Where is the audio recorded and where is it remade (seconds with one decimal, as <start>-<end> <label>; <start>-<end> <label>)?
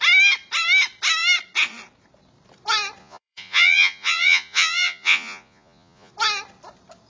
0.0-3.0 recorded; 3.0-6.1 remade; 6.1-7.1 recorded